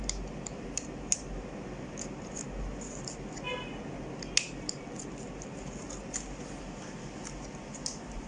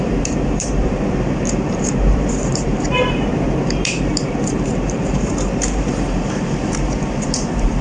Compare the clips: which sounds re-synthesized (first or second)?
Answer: second